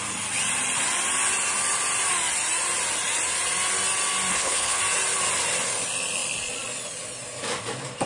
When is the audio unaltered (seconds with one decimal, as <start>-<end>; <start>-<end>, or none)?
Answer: 0.0-4.3; 4.8-8.1